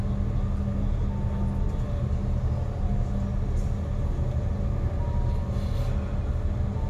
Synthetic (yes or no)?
no